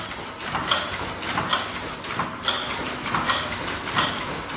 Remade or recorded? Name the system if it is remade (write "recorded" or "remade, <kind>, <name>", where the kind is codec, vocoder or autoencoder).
recorded